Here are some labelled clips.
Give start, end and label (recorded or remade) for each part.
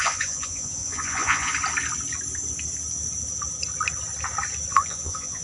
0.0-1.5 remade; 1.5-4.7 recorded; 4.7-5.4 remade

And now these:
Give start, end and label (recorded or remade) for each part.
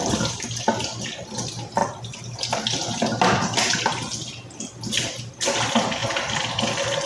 0.0-7.1 recorded